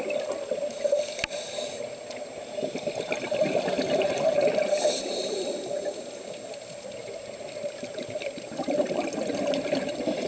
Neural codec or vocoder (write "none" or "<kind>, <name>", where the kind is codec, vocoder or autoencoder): none